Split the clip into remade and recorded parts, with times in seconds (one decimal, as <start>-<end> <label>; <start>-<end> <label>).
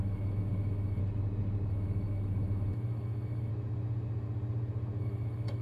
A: 0.0-1.0 remade; 1.0-1.7 recorded; 1.7-3.5 remade; 3.5-5.0 recorded; 5.0-5.6 remade